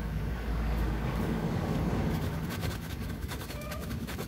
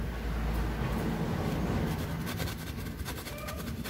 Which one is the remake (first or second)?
first